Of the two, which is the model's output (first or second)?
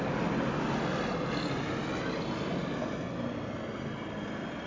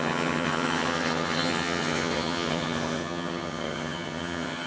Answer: second